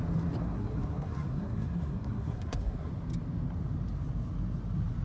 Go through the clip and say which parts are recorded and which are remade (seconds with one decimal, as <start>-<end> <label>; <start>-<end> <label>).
0.0-0.4 recorded; 0.4-2.9 remade; 2.9-5.0 recorded